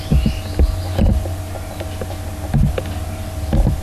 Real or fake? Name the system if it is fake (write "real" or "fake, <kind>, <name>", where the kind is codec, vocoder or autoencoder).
real